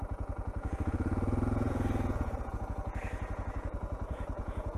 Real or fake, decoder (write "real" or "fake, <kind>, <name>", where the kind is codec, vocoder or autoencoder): fake, vocoder, Vocos